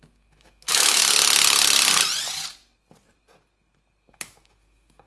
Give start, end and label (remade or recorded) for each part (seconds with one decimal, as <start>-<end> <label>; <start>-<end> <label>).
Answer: 0.0-1.0 remade; 1.0-4.1 recorded; 4.1-5.1 remade